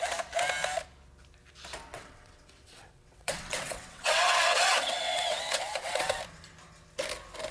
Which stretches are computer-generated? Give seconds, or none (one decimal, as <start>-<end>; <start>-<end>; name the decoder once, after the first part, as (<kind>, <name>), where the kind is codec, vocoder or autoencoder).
1.9-6.2 (vocoder, WaveNeXt)

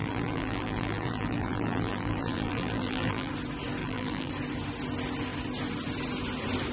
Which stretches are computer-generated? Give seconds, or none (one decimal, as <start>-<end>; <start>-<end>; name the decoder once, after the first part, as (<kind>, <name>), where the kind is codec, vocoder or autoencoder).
0.0-3.3 (vocoder, BigVGAN v2); 3.8-4.3

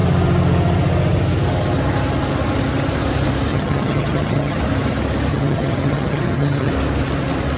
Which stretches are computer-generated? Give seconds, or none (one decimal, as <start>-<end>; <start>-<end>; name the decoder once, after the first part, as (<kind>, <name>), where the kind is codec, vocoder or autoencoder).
3.5-4.6 (vocoder, HiFi-GAN); 5.3-6.7

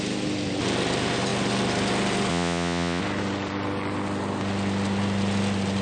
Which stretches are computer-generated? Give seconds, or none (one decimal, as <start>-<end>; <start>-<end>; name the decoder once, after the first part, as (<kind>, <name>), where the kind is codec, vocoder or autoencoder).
2.3-3.0 (vocoder, Vocos)

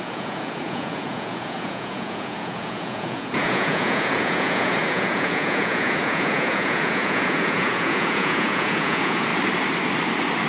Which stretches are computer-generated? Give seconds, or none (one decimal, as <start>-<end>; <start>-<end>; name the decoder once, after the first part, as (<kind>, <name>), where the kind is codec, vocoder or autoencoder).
0.0-9.3 (vocoder, Vocos)

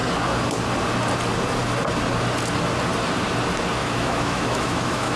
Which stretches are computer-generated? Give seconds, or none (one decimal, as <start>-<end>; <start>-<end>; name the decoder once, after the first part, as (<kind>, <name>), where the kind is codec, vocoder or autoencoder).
3.8-5.2 (autoencoder, DAC-VAE)

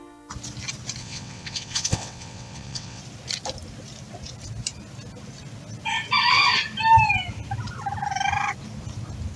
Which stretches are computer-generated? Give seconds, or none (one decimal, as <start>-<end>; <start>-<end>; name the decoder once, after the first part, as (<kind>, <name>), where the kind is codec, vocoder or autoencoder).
1.0-3.0 (vocoder, WaveNeXt)